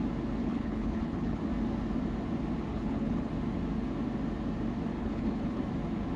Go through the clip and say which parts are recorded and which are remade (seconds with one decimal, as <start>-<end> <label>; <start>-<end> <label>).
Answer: 0.0-0.4 recorded; 0.4-1.4 remade; 1.4-2.7 recorded; 2.7-3.3 remade; 3.3-5.0 recorded; 5.0-5.6 remade; 5.6-6.2 recorded